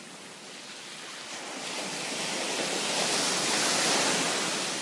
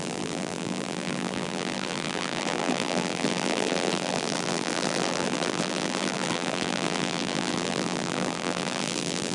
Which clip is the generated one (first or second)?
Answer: second